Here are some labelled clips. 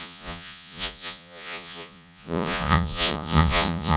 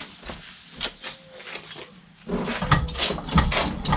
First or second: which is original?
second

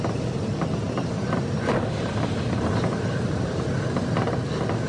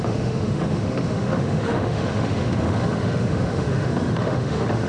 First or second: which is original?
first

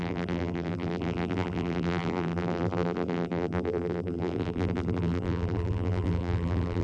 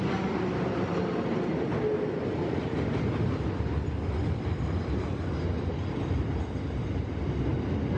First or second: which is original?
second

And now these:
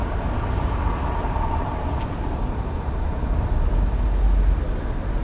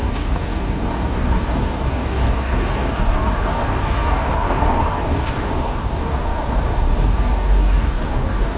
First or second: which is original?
first